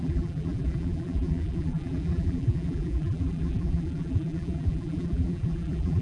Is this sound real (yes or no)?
no